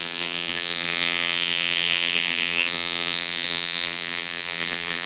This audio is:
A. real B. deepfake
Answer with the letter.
B